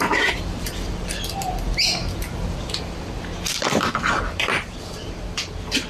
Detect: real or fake fake